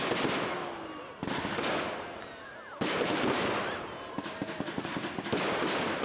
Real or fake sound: real